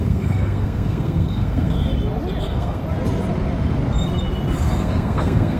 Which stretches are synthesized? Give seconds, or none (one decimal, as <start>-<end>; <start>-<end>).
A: 0.0-1.9; 2.4-2.8; 4.6-5.6